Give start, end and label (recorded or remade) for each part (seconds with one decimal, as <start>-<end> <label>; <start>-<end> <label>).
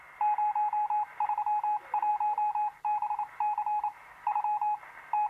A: 0.0-5.3 recorded